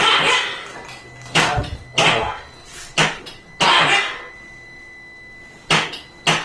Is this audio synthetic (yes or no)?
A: no